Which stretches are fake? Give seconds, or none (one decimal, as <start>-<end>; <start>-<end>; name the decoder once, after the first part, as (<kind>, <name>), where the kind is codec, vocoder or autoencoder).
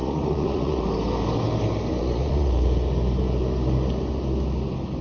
0.0-0.8 (vocoder, Vocos); 1.9-2.5